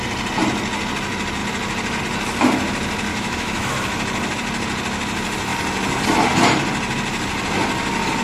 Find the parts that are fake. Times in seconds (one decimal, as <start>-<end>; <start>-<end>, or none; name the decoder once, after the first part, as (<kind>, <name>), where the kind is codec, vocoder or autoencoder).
3.1-3.7 (autoencoder, DAC-VAE)